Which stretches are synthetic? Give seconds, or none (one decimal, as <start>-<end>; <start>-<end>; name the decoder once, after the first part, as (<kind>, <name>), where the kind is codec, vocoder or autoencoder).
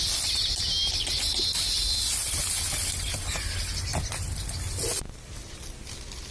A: none